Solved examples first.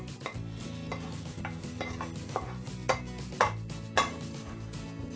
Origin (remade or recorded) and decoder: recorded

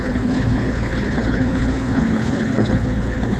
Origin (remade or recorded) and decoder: remade, codec, HILCodec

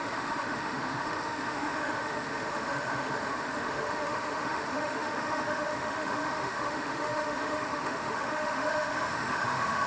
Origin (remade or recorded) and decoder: remade, autoencoder, DAC-VAE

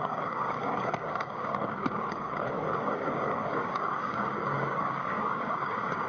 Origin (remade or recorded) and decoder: remade, codec, DAC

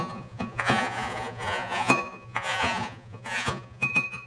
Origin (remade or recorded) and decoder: remade, vocoder, Vocos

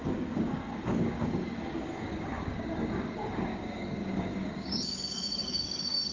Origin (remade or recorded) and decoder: remade, codec, DAC